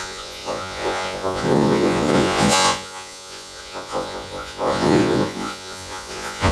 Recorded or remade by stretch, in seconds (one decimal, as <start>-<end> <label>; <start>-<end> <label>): 0.0-6.5 remade